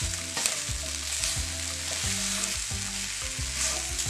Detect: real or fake real